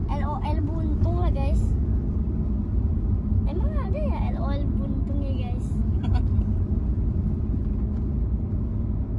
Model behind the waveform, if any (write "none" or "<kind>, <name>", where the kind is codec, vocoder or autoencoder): none